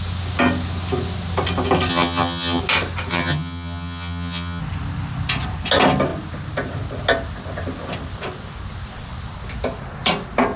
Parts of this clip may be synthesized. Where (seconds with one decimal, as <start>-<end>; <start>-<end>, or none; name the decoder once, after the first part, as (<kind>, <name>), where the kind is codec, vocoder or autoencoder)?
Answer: 1.9-2.6 (vocoder, HiFi-GAN); 3.1-4.6